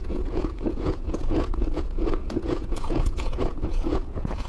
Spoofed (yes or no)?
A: yes